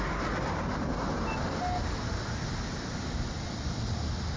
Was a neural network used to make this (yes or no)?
no